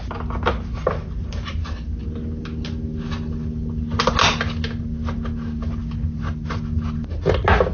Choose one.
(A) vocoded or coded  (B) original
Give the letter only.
B